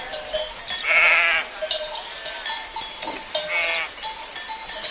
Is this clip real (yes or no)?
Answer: yes